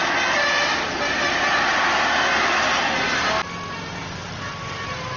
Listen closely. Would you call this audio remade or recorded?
recorded